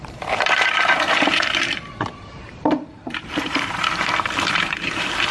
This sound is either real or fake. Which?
fake